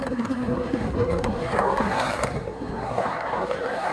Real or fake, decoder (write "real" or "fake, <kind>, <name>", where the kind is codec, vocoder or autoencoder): fake, codec, SNAC